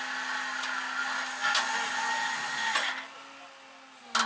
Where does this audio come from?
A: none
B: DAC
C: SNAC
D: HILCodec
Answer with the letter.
A